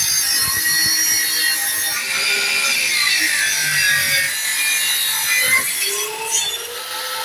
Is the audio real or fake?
real